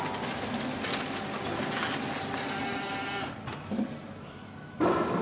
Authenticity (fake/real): real